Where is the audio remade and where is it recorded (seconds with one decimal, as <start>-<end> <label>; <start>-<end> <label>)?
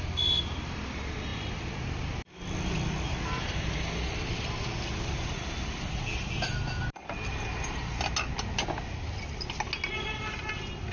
0.0-10.9 recorded